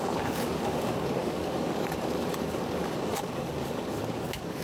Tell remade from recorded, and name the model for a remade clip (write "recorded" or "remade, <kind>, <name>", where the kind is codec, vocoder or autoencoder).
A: remade, codec, DAC